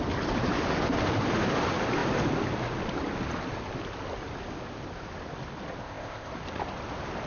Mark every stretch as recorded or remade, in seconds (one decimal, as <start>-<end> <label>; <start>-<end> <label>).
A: 0.0-5.8 recorded; 5.8-6.3 remade; 6.3-7.3 recorded

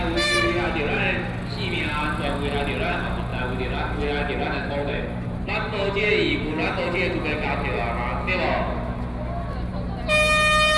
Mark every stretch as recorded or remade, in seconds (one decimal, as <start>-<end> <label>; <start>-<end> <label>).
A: 0.0-4.6 recorded; 4.6-5.6 remade; 5.6-10.8 recorded

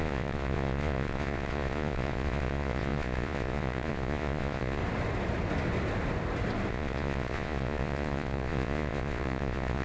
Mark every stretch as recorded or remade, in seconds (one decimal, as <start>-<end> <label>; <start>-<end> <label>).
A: 0.0-4.8 remade; 4.8-6.7 recorded; 6.7-9.8 remade

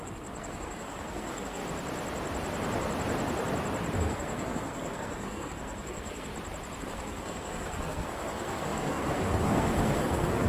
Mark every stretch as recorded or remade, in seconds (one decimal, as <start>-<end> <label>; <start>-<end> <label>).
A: 0.0-1.6 remade; 1.6-4.0 recorded; 4.0-6.3 remade; 6.3-6.8 recorded; 6.8-10.5 remade

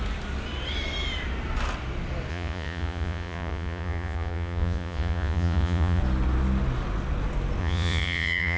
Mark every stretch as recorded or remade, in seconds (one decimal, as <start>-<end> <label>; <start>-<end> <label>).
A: 0.0-2.3 recorded; 2.3-6.0 remade; 6.0-7.6 recorded; 7.6-8.6 remade

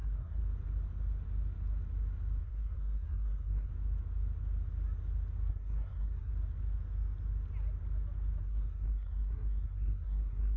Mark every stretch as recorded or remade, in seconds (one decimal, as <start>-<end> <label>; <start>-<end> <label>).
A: 0.0-0.4 remade; 0.4-2.4 recorded; 2.4-3.7 remade; 3.7-5.5 recorded; 5.5-6.3 remade; 6.3-8.4 recorded; 8.4-10.6 remade

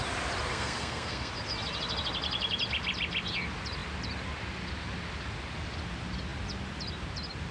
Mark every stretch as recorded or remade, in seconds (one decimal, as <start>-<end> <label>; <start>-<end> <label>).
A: 0.0-0.5 recorded; 0.5-1.3 remade; 1.3-7.5 recorded